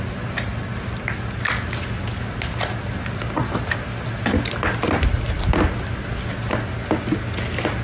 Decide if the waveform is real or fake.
real